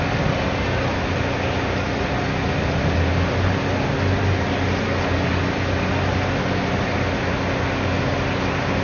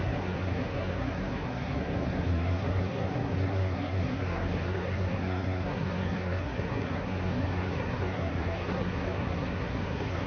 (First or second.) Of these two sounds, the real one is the first